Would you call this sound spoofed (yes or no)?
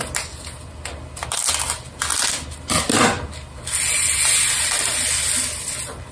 no